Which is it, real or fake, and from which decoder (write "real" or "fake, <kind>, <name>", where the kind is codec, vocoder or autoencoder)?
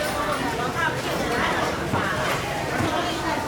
fake, vocoder, BigVGAN v2